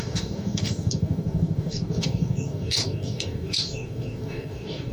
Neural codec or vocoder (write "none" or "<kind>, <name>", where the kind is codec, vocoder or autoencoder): codec, DAC